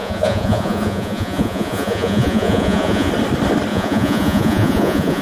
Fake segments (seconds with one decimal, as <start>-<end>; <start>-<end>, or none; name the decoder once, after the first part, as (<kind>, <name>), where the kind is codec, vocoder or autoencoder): 0.0-3.1 (vocoder, Vocos); 3.7-5.2

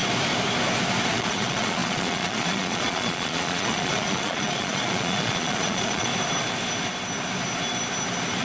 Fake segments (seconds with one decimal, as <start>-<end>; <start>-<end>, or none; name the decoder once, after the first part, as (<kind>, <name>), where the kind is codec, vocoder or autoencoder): 1.1-6.1 (vocoder, Vocos)

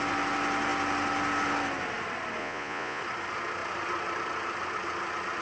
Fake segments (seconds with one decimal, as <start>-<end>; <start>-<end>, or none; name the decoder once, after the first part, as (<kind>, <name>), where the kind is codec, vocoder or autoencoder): 2.4-3.0 (vocoder, Vocos)

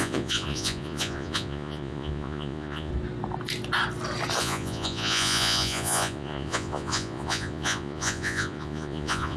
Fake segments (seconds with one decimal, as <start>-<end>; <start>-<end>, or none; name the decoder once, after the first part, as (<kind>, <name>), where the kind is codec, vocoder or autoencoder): 0.0-2.9 (vocoder, Vocos); 4.4-9.4